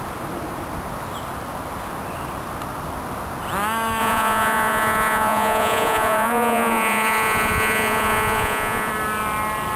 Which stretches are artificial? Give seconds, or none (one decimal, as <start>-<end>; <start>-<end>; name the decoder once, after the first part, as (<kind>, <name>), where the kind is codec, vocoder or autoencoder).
4.0-8.9 (vocoder, Vocos)